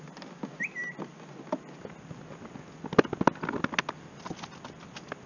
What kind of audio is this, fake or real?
real